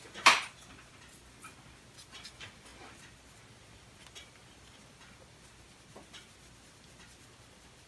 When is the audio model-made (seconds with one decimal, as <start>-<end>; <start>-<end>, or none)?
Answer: none